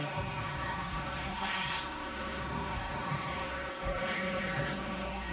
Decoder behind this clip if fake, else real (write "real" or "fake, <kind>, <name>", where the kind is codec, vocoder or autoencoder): fake, codec, SNAC